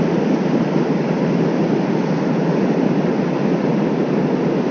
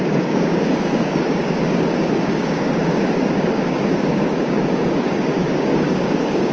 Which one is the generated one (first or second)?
second